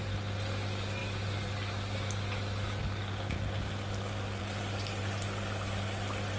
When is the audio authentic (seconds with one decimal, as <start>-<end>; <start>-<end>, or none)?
0.0-6.4